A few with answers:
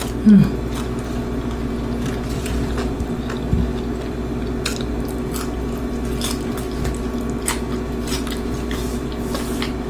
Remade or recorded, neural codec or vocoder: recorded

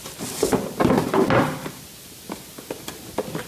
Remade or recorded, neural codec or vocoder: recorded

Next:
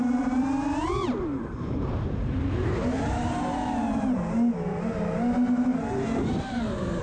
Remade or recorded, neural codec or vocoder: remade, vocoder, BigVGAN v2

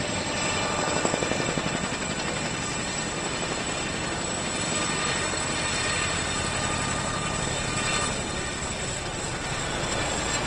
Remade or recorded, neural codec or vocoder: remade, vocoder, BigVGAN v2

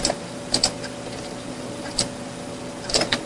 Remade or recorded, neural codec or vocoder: remade, vocoder, BigVGAN v2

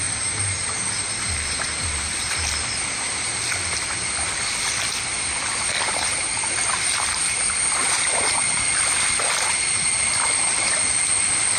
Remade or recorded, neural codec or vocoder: recorded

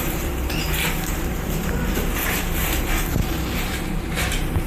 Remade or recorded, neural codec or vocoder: remade, vocoder, BigVGAN v2